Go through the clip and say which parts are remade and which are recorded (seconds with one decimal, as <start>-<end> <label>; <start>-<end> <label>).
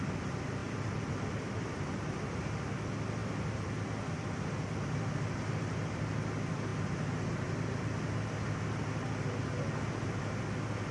0.0-0.6 recorded; 0.6-1.8 remade; 1.8-10.9 recorded